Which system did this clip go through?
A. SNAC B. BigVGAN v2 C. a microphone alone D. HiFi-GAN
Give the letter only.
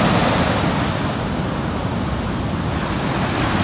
C